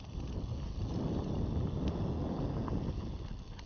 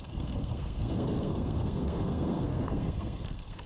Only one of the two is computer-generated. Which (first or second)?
second